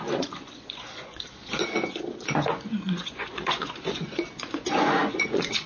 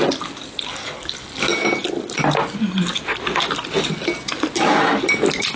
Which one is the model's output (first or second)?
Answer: first